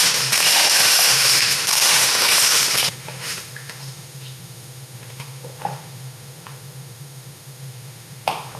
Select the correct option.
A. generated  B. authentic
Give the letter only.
A